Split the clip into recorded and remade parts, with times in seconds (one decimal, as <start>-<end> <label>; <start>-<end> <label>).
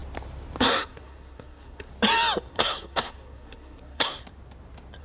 0.0-0.6 recorded; 0.6-1.9 remade; 1.9-2.5 recorded; 2.5-4.2 remade; 4.2-5.0 recorded